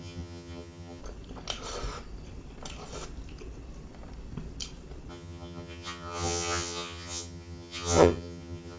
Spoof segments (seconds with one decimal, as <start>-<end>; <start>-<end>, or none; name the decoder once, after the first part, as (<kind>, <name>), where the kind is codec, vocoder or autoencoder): 0.0-1.0 (vocoder, HiFi-GAN); 5.1-8.8